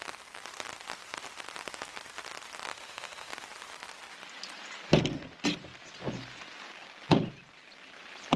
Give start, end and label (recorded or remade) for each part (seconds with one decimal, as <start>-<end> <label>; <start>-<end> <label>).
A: 0.0-2.7 recorded; 2.7-3.3 remade; 3.3-8.4 recorded